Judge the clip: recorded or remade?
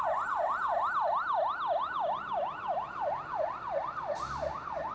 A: recorded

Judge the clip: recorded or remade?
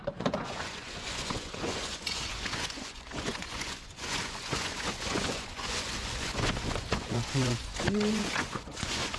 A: remade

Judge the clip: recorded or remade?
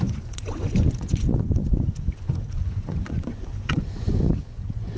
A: remade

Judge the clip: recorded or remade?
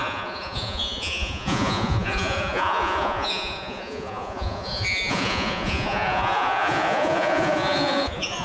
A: remade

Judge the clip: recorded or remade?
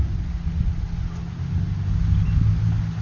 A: recorded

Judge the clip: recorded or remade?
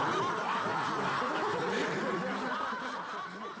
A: recorded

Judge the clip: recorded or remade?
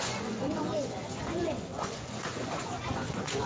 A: remade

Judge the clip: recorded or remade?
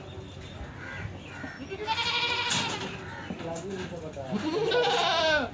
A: recorded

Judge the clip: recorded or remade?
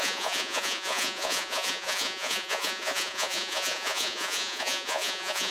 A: remade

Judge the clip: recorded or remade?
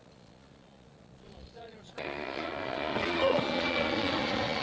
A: remade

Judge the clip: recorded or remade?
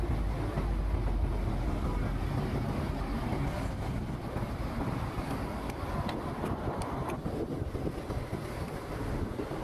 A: recorded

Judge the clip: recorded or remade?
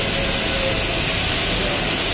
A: recorded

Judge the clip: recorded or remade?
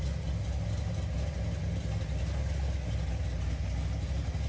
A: recorded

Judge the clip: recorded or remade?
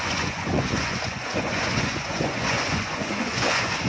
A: remade